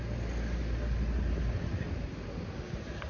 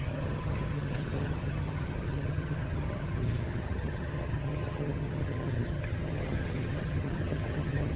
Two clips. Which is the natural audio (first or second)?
first